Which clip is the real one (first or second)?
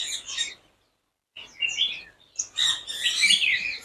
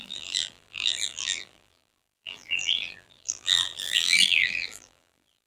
first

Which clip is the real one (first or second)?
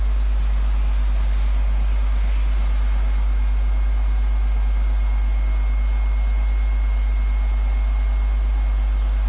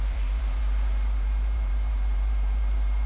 first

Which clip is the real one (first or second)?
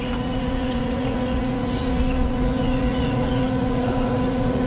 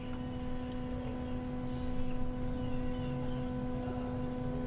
second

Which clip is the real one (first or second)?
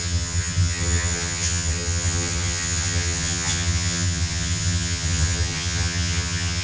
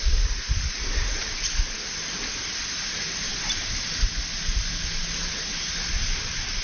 second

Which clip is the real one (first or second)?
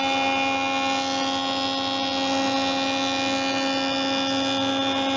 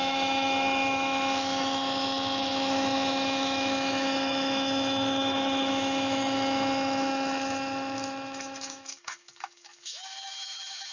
first